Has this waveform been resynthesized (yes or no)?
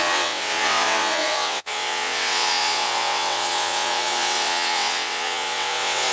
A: yes